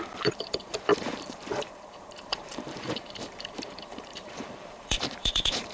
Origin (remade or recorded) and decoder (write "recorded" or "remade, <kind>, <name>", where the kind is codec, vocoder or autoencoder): remade, vocoder, BigVGAN v2